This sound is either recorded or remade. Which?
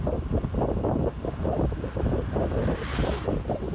recorded